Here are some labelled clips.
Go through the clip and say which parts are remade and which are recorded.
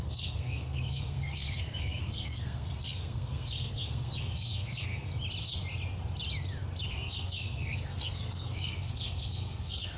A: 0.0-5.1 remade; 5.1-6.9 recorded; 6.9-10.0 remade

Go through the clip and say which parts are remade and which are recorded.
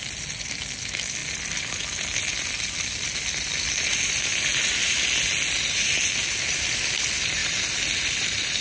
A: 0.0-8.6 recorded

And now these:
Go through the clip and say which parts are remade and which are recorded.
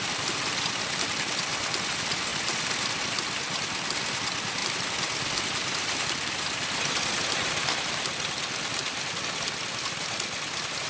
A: 0.0-10.9 recorded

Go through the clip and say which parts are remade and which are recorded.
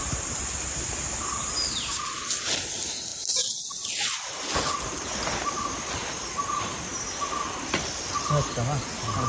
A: 0.0-9.3 recorded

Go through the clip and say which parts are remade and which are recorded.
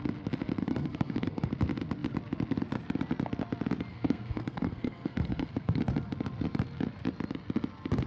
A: 0.0-0.6 recorded; 0.6-1.5 remade; 1.5-3.9 recorded; 3.9-5.8 remade; 5.8-8.1 recorded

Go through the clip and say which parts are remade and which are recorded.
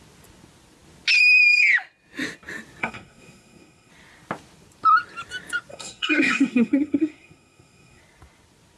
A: 0.0-2.8 recorded; 2.8-3.9 remade; 3.9-5.7 recorded; 5.7-8.0 remade; 8.0-8.8 recorded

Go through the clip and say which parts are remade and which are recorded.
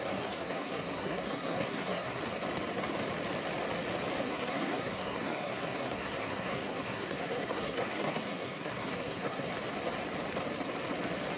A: 0.0-2.2 remade; 2.2-4.2 recorded; 4.2-9.5 remade; 9.5-11.4 recorded